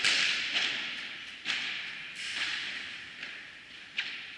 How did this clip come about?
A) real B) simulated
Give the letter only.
A